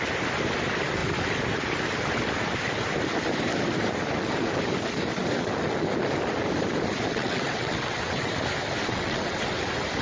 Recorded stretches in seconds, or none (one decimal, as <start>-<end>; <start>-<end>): 0.0-7.1; 8.3-8.8; 9.4-10.0